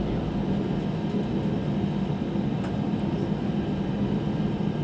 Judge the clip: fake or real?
real